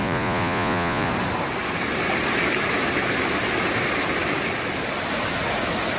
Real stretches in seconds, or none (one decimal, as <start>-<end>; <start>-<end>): 1.1-6.0